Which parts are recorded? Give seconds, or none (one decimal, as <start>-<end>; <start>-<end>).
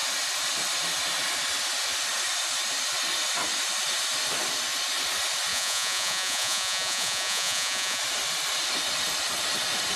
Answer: 0.0-5.5; 8.0-10.0